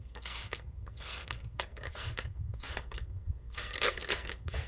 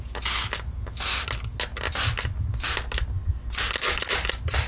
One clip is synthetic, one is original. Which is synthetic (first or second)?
first